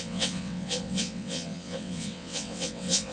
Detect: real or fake fake